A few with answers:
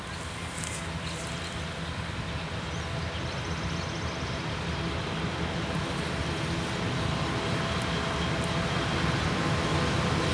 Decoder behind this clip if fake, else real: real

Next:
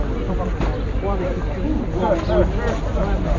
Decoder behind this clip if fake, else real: real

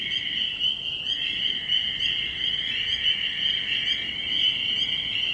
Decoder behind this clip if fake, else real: real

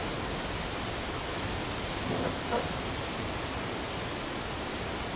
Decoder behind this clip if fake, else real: real